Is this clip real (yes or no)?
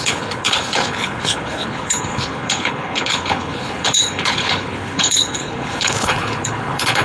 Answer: no